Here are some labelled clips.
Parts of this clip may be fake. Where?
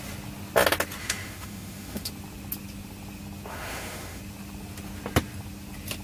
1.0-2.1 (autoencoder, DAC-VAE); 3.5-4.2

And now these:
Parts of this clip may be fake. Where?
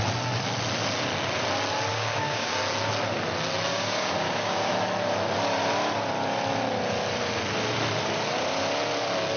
1.9-2.6 (codec, DAC); 3.7-4.7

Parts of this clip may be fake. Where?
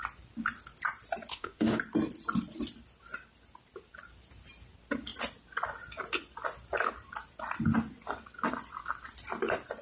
1.3-1.8 (autoencoder, DAC-VAE)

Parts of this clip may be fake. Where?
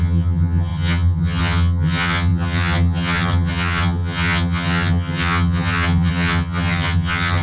0.0-7.4 (vocoder, HiFi-GAN)